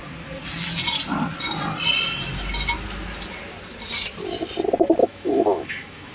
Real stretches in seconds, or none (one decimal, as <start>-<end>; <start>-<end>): 0.0-5.0